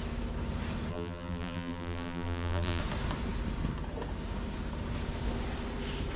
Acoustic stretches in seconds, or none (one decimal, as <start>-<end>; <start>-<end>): 0.0-0.9; 2.8-6.2